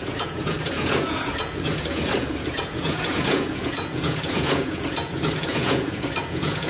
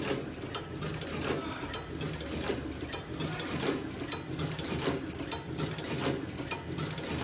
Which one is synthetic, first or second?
first